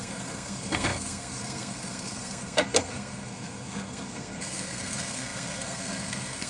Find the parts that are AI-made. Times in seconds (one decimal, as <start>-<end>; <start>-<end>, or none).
0.0-6.5